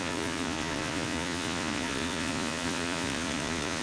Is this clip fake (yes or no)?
yes